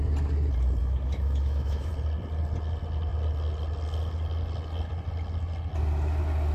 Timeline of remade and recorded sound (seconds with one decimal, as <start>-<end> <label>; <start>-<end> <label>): 0.0-0.8 recorded; 0.8-1.9 remade; 1.9-6.5 recorded